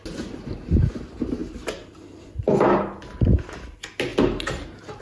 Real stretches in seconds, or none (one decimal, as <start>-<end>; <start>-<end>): 0.0-5.0